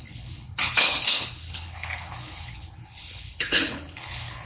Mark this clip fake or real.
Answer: fake